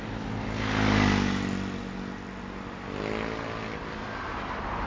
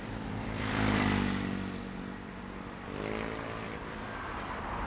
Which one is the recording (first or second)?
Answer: first